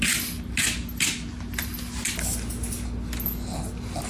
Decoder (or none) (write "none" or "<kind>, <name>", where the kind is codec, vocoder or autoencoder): none